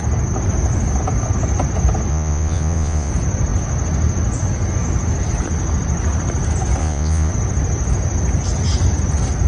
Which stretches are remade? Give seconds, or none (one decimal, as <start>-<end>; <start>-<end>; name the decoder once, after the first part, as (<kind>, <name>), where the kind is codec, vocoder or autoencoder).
2.1-3.1 (vocoder, Vocos); 6.8-7.3